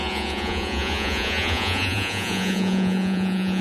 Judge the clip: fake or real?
fake